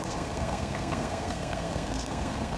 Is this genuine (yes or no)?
no